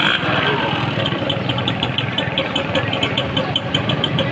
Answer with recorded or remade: remade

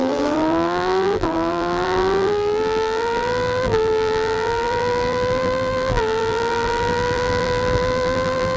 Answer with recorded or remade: remade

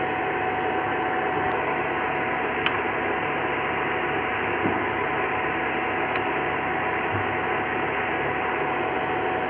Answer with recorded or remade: recorded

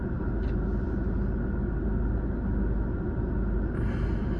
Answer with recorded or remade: recorded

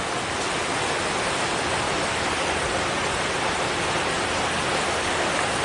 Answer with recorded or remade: recorded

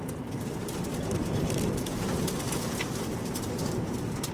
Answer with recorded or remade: remade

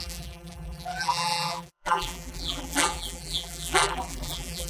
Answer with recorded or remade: remade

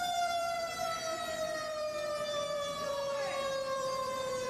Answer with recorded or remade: remade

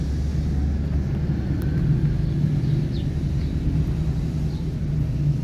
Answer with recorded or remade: recorded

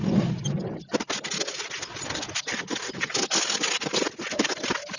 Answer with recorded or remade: recorded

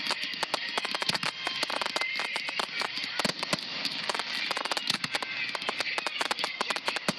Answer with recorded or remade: recorded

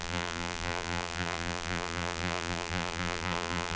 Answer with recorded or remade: remade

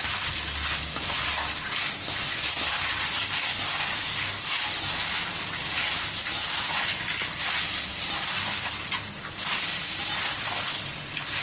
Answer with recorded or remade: recorded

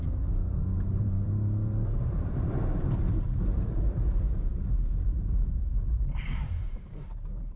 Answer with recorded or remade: remade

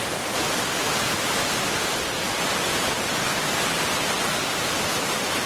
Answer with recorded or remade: remade